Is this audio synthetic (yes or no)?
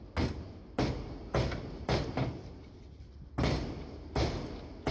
no